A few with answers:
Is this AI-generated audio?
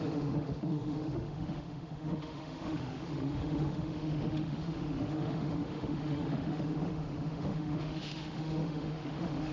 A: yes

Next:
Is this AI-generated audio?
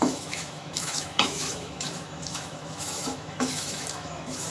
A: yes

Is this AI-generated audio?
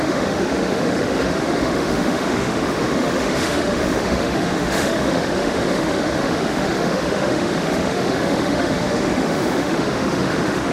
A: yes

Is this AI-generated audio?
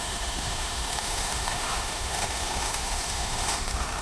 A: yes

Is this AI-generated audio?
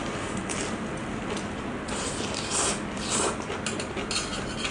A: no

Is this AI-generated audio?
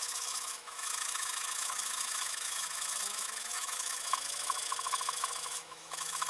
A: yes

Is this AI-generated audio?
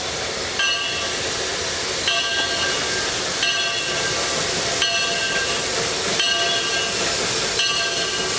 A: no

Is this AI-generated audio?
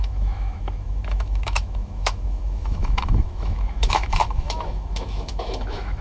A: yes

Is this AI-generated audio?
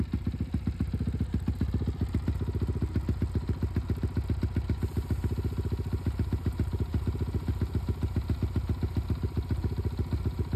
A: no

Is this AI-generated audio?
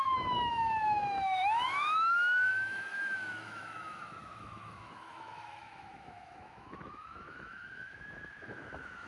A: yes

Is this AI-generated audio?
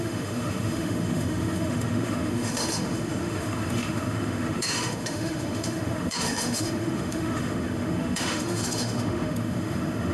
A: yes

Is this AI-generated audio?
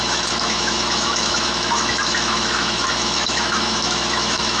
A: yes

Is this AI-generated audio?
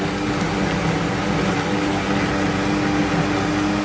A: no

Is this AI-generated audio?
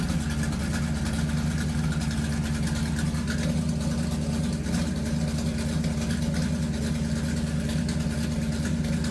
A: no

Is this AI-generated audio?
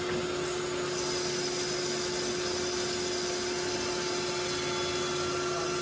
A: no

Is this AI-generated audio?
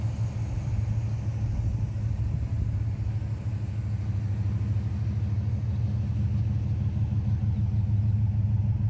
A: no